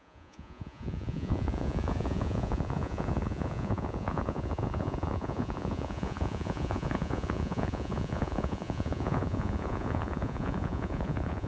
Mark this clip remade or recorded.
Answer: remade